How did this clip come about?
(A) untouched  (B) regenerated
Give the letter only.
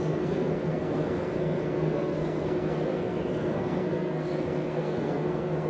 B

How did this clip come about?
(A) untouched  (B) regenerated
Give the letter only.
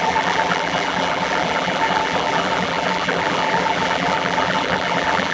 B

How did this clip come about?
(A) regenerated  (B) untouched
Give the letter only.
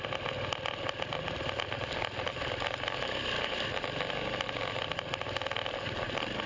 B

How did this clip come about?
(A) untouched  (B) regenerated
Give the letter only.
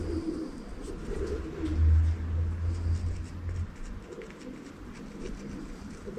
A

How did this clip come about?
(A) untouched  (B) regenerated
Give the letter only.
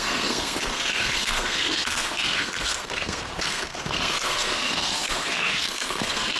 B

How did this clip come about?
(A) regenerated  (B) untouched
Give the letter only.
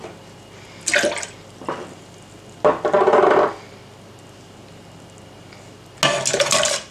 B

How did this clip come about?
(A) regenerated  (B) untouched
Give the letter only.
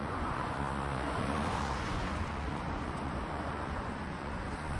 A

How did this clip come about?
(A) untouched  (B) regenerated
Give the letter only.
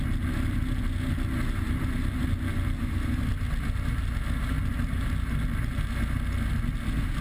A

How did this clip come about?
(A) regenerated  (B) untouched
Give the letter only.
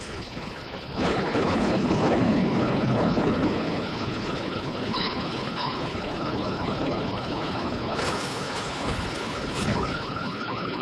A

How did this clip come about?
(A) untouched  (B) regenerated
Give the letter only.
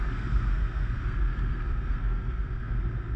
B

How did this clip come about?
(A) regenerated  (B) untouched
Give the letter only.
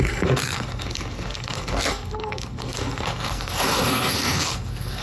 A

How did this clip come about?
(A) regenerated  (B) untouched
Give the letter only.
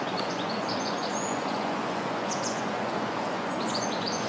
A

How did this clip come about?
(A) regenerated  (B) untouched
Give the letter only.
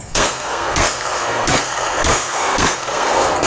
A